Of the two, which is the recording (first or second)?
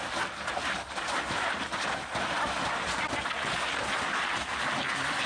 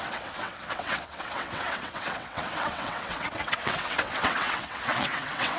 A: first